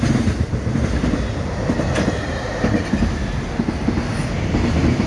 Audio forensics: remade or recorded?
recorded